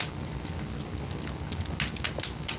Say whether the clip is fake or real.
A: real